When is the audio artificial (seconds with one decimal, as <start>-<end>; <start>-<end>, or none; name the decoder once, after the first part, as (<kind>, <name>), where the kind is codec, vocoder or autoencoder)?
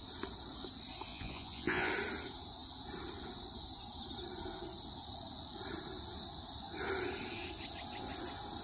1.1-1.9 (vocoder, Vocos)